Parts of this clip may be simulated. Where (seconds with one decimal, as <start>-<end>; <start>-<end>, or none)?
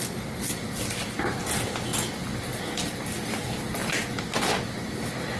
none